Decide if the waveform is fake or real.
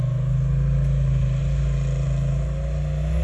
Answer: real